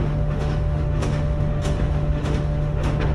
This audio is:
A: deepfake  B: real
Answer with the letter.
A